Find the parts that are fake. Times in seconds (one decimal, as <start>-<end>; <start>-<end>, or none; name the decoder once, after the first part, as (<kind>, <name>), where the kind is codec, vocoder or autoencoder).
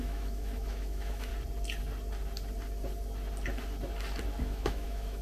0.0-1.3 (autoencoder, DAC-VAE); 4.4-5.2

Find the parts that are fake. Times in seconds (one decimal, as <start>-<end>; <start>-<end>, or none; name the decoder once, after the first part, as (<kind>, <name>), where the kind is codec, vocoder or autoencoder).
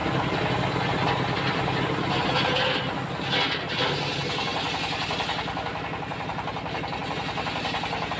none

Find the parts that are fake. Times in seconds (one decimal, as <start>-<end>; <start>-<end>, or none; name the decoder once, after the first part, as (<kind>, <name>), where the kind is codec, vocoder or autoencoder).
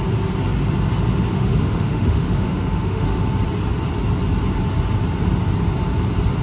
1.3-3.3 (autoencoder, DAC-VAE)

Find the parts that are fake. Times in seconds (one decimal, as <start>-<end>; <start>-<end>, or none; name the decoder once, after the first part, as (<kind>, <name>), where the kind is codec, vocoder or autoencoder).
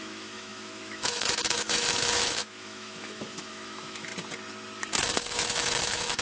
0.0-4.1 (autoencoder, DAC-VAE); 4.8-6.2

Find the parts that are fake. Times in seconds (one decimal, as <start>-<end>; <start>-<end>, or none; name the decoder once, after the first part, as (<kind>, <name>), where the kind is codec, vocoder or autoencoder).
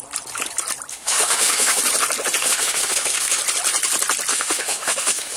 0.9-1.8 (autoencoder, DAC-VAE); 2.4-3.4; 4.3-5.4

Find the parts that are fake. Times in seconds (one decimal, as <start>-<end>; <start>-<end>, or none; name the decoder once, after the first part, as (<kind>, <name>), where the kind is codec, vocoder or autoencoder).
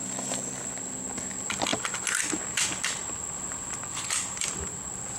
none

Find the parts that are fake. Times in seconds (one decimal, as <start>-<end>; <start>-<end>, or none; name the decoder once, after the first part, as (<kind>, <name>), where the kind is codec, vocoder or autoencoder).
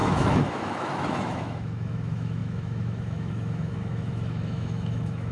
0.0-5.3 (autoencoder, DAC-VAE)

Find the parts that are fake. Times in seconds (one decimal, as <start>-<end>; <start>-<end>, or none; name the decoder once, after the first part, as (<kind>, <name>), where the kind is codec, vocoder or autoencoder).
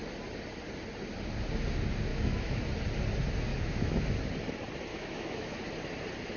2.1-2.6 (autoencoder, DAC-VAE); 3.5-4.1; 4.9-5.6